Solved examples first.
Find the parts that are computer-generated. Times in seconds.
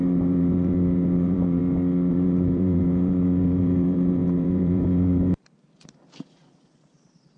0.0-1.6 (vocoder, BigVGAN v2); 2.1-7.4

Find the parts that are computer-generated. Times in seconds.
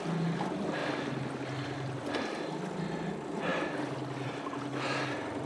none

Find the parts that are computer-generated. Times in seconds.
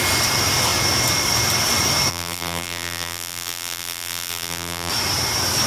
2.1-4.9 (vocoder, BigVGAN v2)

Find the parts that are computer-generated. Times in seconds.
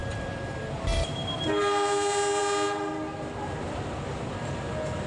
0.0-1.6 (vocoder, BigVGAN v2)